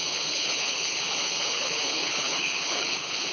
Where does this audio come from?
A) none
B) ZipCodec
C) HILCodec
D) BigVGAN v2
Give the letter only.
C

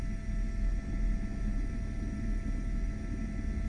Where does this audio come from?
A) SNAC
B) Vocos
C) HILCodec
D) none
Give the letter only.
D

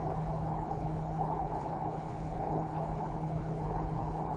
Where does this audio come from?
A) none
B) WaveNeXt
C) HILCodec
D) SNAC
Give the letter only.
C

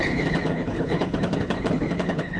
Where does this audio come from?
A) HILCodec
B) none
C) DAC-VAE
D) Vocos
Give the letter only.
A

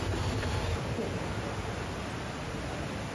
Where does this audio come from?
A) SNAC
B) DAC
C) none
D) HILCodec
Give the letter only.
C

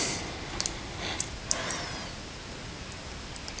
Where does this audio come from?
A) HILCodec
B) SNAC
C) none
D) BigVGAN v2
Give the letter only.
C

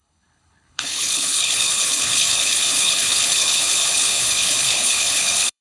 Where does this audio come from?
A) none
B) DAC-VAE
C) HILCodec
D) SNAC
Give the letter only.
C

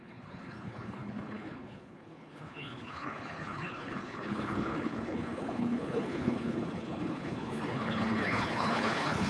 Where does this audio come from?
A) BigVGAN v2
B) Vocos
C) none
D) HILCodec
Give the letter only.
D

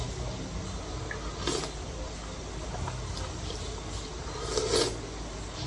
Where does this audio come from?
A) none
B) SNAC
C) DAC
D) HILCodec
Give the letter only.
A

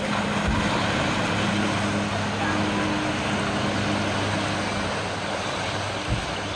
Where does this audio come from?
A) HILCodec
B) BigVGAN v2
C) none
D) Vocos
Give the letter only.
C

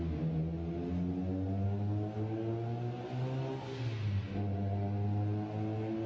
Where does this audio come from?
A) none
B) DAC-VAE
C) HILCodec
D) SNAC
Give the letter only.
A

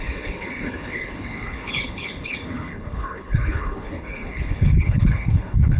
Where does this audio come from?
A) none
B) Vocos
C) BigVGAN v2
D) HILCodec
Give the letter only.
D